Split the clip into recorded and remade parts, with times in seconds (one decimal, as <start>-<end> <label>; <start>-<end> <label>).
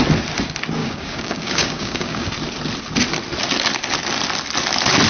0.0-0.8 recorded; 0.8-2.3 remade; 2.3-5.1 recorded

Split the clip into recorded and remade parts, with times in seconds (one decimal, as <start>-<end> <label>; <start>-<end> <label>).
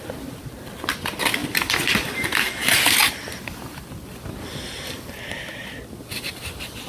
0.0-6.9 recorded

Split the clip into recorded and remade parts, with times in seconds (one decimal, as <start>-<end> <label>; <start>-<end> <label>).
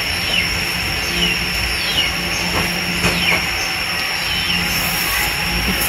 0.0-5.9 recorded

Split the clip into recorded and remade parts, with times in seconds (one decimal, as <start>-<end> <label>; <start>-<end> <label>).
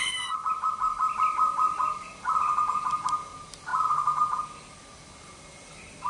0.0-6.1 recorded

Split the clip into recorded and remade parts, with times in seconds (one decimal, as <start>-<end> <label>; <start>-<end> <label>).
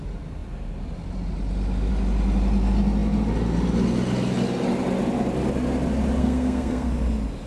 0.0-6.2 recorded; 6.2-6.9 remade; 6.9-7.5 recorded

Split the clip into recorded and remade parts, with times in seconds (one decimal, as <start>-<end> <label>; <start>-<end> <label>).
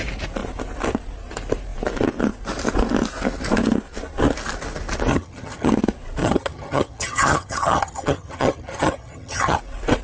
0.0-5.1 recorded; 5.1-5.7 remade; 5.7-6.2 recorded; 6.2-9.6 remade; 9.6-10.0 recorded